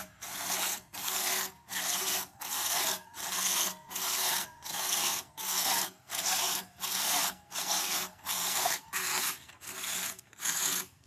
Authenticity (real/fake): fake